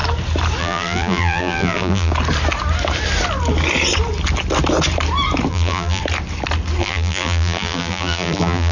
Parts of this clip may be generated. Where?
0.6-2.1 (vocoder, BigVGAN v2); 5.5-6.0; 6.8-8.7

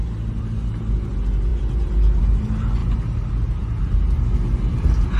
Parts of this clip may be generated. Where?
none